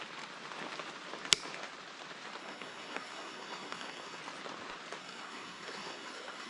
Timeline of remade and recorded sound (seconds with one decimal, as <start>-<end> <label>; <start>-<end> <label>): 0.0-2.4 recorded; 2.4-4.2 remade; 4.2-5.0 recorded; 5.0-6.5 remade